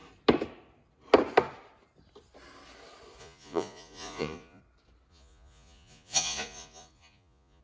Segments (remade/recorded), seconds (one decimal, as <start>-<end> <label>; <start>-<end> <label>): 0.0-3.2 recorded; 3.2-4.6 remade; 4.6-5.1 recorded; 5.1-7.6 remade

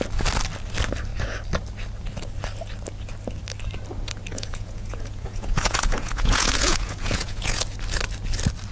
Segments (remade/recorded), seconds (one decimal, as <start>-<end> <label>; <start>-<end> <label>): 0.0-4.3 recorded; 4.3-7.7 remade; 7.7-8.7 recorded

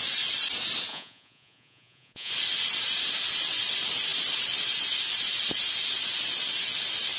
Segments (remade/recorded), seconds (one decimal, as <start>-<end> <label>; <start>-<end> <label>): 0.0-0.9 recorded; 0.9-2.3 remade; 2.3-7.2 recorded

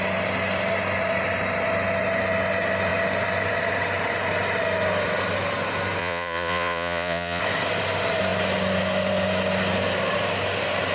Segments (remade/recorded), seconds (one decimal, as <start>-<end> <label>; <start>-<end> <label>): 0.0-6.0 recorded; 6.0-7.4 remade; 7.4-10.9 recorded

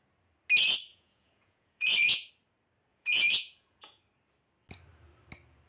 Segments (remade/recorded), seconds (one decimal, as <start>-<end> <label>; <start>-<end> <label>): 0.0-0.9 recorded; 0.9-2.3 remade; 2.3-2.9 recorded; 2.9-4.0 remade; 4.0-5.7 recorded

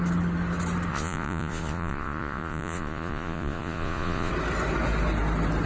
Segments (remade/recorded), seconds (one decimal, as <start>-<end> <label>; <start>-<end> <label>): 0.0-0.9 recorded; 0.9-4.3 remade; 4.3-5.7 recorded